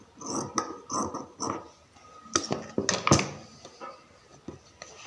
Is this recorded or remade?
recorded